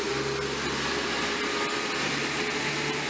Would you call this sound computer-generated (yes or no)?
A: no